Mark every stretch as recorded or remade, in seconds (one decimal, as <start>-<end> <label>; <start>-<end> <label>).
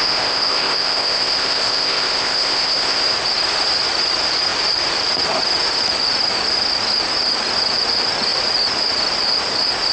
0.0-3.0 remade; 3.0-9.9 recorded